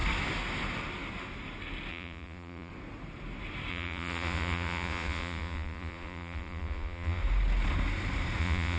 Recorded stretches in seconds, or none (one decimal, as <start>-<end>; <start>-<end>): 0.0-1.9; 2.7-3.7; 7.2-8.4